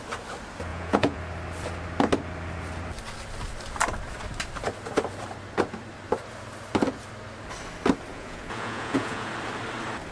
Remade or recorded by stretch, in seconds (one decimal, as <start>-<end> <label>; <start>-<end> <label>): 0.0-0.7 recorded; 0.7-1.2 remade; 1.2-8.1 recorded; 8.1-9.3 remade; 9.3-10.1 recorded